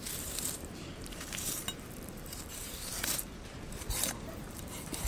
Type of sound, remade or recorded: remade